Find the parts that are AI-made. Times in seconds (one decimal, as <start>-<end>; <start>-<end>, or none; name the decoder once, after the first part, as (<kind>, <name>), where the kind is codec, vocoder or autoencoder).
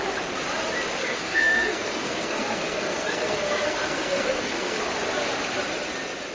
1.0-4.8 (codec, SNAC)